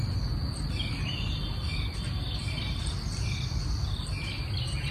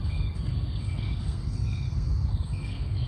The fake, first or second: second